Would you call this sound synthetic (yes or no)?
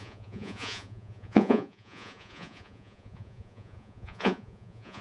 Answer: yes